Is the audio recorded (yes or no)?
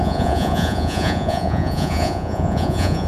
no